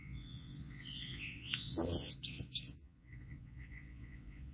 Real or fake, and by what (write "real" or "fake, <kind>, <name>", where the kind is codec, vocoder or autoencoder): fake, vocoder, Vocos